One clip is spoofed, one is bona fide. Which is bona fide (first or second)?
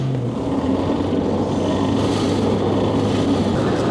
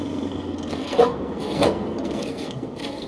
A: first